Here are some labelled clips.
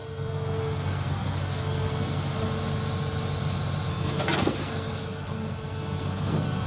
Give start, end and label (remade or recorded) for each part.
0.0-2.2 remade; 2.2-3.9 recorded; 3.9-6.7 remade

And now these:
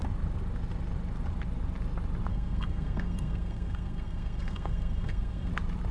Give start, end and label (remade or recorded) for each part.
0.0-2.3 recorded; 2.3-5.5 remade; 5.5-5.9 recorded

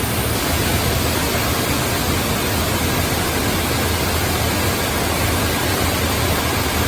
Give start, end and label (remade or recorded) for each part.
0.0-0.7 remade; 0.7-4.8 recorded; 4.8-6.9 remade

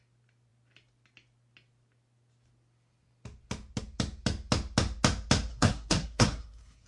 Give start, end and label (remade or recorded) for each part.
0.0-5.5 recorded; 5.5-6.9 remade